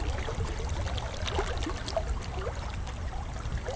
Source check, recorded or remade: recorded